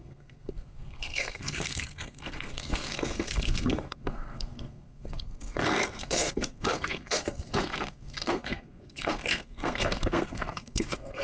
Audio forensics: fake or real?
fake